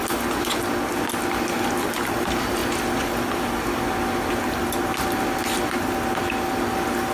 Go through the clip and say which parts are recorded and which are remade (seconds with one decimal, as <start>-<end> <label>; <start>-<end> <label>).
0.0-7.1 recorded